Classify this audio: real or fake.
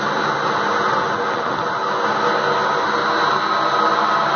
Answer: real